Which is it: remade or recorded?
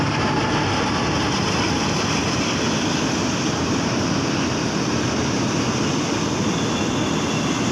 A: recorded